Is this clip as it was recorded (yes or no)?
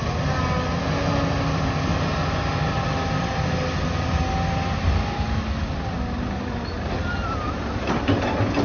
yes